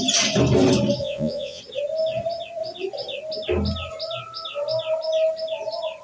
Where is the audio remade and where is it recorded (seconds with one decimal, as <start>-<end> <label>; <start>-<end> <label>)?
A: 0.0-1.0 recorded; 1.0-1.6 remade; 1.6-6.0 recorded